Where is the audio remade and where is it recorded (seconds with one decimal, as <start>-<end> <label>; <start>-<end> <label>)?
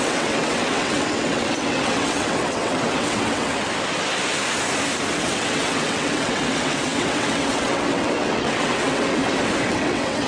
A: 0.0-3.5 remade; 3.5-5.1 recorded; 5.1-9.2 remade; 9.2-9.7 recorded; 9.7-10.3 remade